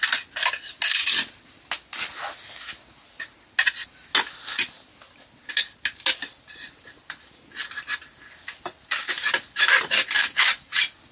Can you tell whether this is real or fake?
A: real